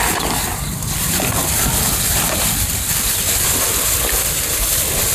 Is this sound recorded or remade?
recorded